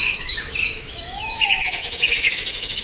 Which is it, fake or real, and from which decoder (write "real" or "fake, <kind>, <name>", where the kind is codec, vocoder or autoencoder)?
fake, autoencoder, DAC-VAE